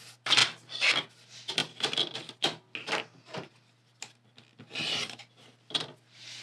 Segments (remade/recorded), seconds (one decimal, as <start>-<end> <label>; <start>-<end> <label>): 0.0-6.4 recorded

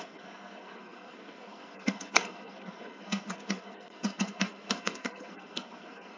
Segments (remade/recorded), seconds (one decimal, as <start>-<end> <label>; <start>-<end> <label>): 0.0-6.2 remade

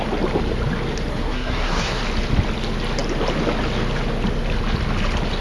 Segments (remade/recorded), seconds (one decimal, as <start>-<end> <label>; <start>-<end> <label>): 0.0-1.1 recorded; 1.1-2.0 remade; 2.0-5.4 recorded